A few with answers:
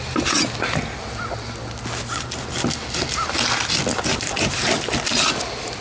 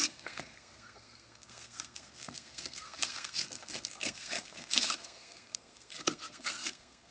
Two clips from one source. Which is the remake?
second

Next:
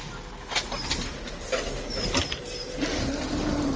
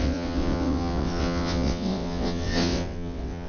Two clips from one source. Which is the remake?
second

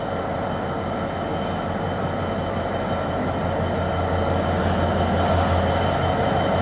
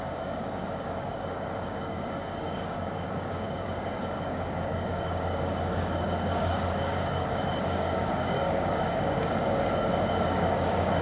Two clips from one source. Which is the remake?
second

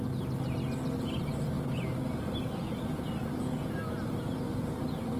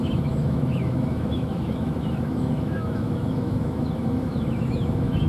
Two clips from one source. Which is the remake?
second